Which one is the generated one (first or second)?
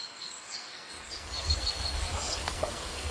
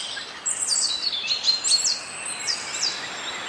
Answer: first